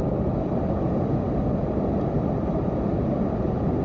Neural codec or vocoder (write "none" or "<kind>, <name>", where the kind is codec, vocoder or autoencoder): none